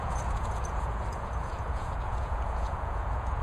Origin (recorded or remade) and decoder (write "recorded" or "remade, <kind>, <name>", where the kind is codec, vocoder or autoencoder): remade, vocoder, Vocos